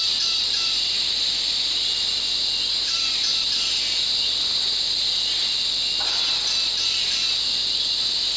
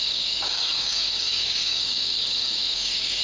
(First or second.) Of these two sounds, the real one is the first